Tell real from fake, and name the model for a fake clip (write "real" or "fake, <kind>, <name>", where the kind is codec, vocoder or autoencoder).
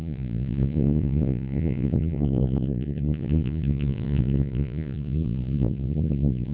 fake, vocoder, Vocos